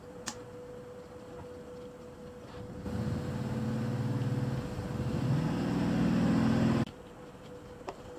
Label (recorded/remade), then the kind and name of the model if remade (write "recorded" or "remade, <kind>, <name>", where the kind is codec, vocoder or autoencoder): recorded